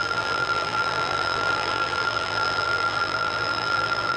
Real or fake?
fake